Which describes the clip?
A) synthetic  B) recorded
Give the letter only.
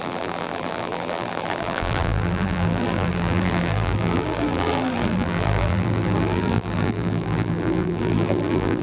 A